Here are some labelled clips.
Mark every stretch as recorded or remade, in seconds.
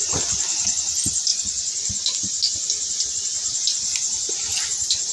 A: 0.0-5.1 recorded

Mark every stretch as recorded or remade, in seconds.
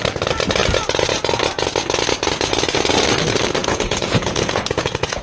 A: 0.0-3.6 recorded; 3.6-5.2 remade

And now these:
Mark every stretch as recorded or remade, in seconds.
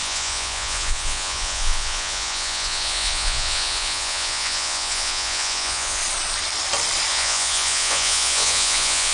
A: 0.0-6.0 remade; 6.0-7.1 recorded; 7.1-9.1 remade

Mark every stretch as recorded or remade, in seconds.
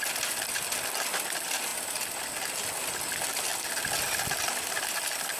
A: 0.0-5.4 recorded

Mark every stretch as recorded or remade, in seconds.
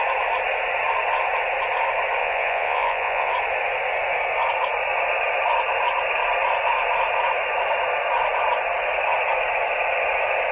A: 0.0-2.2 recorded; 2.2-3.3 remade; 3.3-10.5 recorded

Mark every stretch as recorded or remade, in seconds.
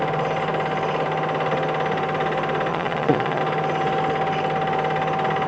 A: 0.0-2.7 recorded; 2.7-3.4 remade; 3.4-5.5 recorded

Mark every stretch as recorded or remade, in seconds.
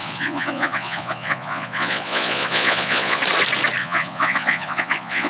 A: 0.0-3.2 remade; 3.2-3.8 recorded; 3.8-5.3 remade